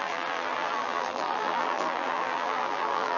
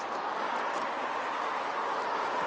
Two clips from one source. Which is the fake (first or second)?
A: first